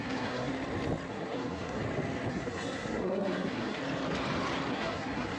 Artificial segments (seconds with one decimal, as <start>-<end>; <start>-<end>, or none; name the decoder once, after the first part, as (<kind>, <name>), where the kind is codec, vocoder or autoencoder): 0.0-0.5 (codec, SNAC); 1.1-1.8; 2.3-3.8; 4.7-5.4